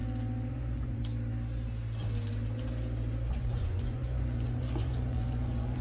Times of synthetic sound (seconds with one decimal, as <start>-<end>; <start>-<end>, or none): 0.5-1.0; 3.3-5.8